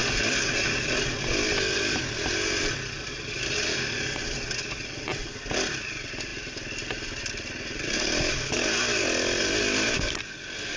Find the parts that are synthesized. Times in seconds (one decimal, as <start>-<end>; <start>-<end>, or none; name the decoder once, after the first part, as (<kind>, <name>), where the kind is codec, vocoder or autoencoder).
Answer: none